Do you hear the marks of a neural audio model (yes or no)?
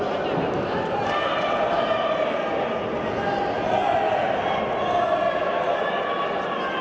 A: no